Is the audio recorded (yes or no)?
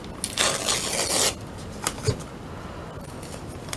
yes